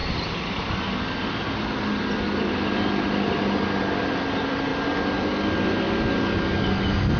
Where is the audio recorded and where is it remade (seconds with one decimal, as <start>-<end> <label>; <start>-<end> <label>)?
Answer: 0.0-7.2 recorded